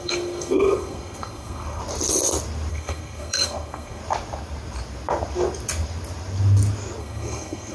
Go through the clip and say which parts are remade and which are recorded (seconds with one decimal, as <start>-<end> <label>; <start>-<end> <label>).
0.0-1.8 remade; 1.8-2.7 recorded; 2.7-4.0 remade; 4.0-7.0 recorded; 7.0-7.7 remade